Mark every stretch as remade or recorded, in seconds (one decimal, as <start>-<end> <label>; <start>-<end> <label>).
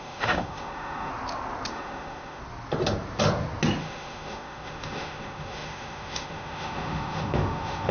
0.0-1.1 remade; 1.1-1.7 recorded; 1.7-2.4 remade; 2.4-3.8 recorded; 3.8-7.9 remade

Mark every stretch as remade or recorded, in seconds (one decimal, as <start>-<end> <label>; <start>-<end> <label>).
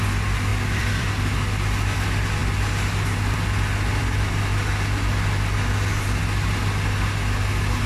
0.0-0.5 recorded; 0.5-1.1 remade; 1.1-7.9 recorded